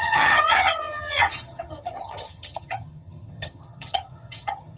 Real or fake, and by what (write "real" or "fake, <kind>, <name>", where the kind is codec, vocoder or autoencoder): fake, vocoder, HiFi-GAN